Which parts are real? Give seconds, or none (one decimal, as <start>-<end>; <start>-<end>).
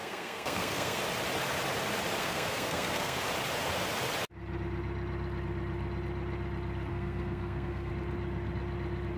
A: 1.0-2.2; 3.2-6.9; 7.9-9.2